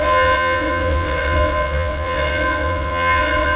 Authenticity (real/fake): fake